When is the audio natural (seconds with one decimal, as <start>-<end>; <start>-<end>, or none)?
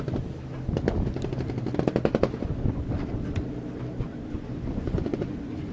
0.0-4.1